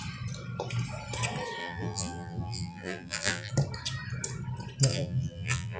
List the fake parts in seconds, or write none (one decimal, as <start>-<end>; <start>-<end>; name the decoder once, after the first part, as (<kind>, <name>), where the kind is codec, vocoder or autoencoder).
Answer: 1.6-3.5 (vocoder, BigVGAN v2); 4.9-5.8